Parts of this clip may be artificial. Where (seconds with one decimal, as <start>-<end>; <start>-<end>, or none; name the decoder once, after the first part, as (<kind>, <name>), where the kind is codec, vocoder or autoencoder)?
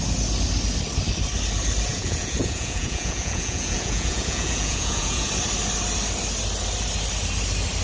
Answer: 1.9-5.3 (vocoder, Vocos)